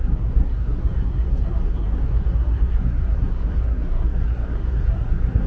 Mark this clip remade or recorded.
remade